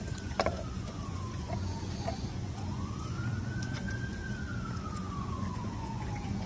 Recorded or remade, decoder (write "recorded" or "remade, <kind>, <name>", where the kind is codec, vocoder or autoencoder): remade, vocoder, Vocos